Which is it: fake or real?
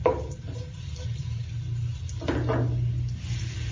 real